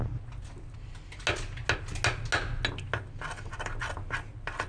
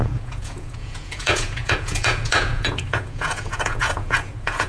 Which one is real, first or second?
first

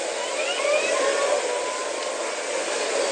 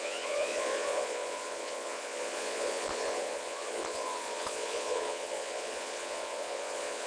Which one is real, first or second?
first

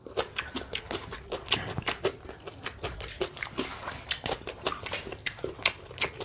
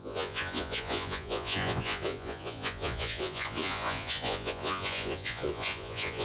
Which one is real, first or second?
first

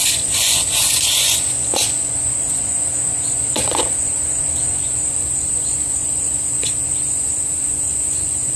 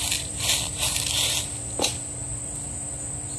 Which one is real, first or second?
second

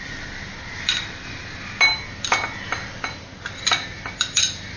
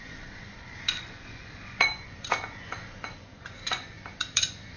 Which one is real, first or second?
first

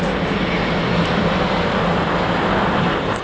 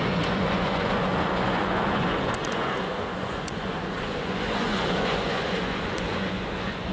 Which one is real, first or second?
first